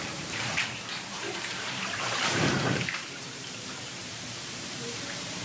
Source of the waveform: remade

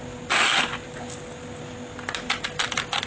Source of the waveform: recorded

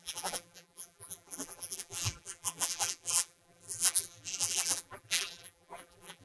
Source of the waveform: remade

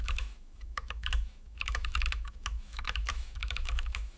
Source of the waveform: remade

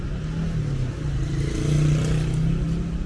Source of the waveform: recorded